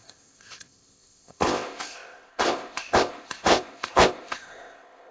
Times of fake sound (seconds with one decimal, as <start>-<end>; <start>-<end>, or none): 0.0-5.1